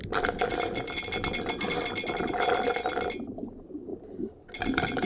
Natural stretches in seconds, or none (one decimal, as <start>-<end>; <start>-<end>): 0.0-5.0